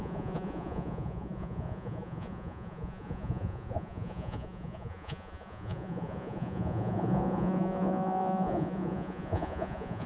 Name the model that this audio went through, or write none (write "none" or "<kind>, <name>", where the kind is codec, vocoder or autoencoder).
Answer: vocoder, Vocos